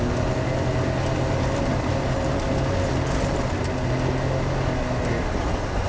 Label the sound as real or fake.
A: real